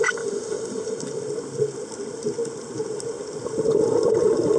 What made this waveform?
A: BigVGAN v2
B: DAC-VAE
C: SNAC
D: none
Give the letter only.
D